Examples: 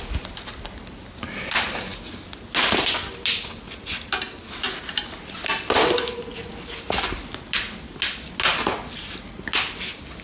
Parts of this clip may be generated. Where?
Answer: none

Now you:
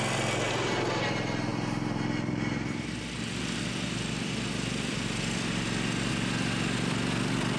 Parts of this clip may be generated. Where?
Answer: none

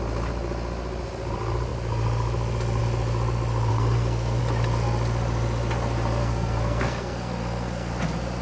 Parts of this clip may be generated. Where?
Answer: 3.7-4.4 (codec, SNAC); 6.2-7.9

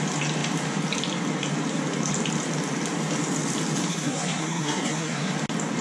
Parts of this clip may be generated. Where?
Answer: 3.9-5.3 (codec, SNAC)

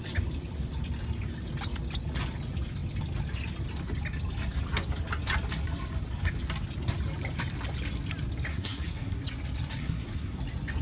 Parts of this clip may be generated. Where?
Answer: 8.5-9.2 (codec, SNAC); 9.8-10.4

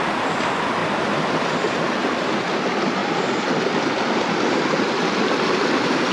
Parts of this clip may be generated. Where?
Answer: none